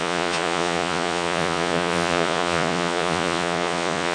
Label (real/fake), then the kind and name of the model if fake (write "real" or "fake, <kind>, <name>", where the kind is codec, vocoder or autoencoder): fake, vocoder, Vocos